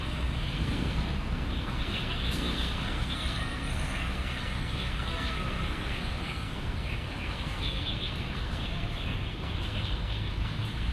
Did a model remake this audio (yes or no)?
yes